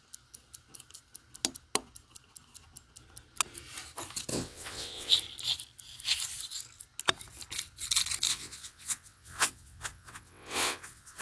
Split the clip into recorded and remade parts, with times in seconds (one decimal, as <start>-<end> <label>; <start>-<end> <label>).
0.0-4.3 recorded; 4.3-5.1 remade; 5.1-8.3 recorded; 8.3-11.2 remade